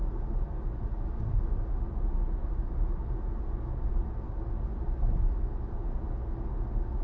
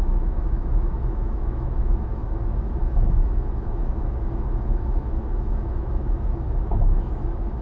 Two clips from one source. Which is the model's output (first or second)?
second